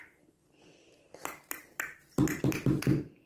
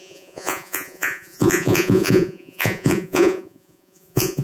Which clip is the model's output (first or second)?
second